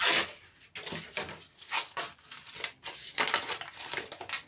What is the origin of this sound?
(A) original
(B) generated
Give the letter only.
A